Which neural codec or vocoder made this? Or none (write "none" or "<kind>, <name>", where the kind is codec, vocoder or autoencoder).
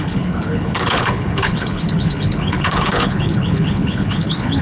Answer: codec, HILCodec